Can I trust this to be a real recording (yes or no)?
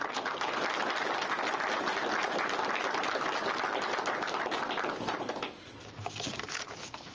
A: yes